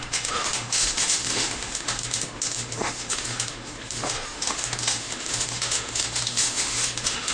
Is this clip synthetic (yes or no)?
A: yes